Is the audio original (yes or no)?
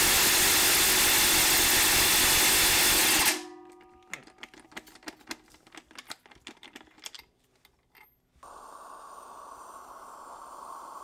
yes